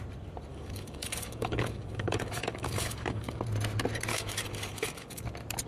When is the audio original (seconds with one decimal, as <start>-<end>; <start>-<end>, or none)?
0.0-0.5; 3.4-4.1; 5.2-5.7